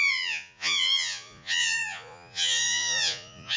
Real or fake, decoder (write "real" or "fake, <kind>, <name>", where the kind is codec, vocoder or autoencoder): fake, vocoder, Vocos